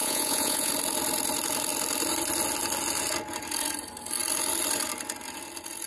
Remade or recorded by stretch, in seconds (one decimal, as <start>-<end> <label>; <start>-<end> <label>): 0.0-0.7 remade; 0.7-5.9 recorded